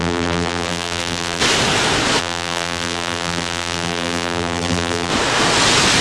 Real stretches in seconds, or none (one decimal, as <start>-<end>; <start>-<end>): 1.4-2.2; 5.1-6.0